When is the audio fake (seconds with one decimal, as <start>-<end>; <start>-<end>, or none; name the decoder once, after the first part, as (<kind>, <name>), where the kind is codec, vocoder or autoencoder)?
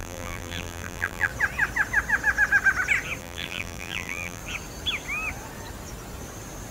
0.0-1.3 (vocoder, BigVGAN v2); 3.2-4.4